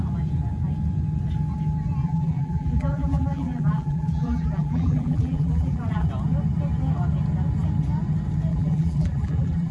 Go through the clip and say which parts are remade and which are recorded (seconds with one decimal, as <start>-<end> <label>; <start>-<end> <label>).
0.0-2.0 recorded; 2.0-6.1 remade; 6.1-8.5 recorded; 8.5-9.7 remade